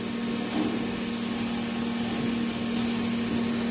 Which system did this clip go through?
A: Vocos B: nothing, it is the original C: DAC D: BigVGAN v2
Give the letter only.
B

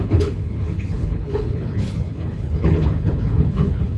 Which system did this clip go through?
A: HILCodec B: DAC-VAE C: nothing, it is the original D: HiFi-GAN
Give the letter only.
A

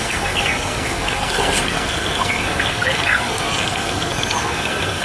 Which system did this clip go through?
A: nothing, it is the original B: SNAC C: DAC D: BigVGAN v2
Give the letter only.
B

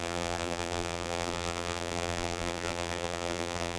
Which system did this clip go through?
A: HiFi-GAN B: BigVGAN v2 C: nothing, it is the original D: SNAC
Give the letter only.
B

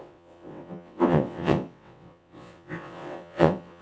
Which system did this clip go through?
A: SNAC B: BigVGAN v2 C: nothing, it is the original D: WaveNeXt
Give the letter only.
D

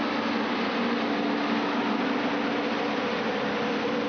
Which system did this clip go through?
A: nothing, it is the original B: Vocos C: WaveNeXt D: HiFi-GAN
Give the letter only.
A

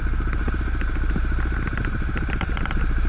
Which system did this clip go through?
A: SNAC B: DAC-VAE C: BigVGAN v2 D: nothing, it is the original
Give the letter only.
D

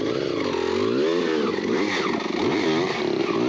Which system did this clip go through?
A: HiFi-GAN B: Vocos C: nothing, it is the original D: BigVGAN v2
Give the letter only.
C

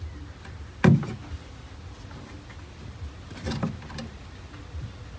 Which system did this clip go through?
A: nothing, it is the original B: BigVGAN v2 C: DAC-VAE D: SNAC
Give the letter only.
A